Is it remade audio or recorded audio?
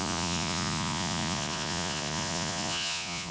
remade